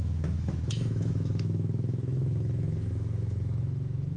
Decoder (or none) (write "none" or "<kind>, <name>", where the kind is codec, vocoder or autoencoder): autoencoder, DAC-VAE